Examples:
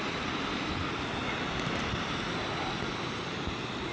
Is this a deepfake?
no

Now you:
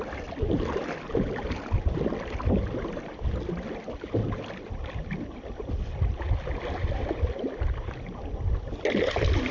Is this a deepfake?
no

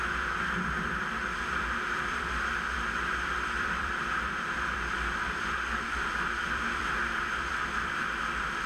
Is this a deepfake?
yes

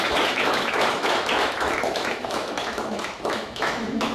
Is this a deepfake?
yes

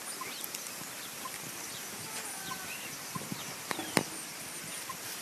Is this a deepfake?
yes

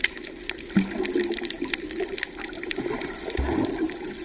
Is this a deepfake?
no